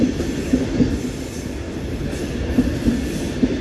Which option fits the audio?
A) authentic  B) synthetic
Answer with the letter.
A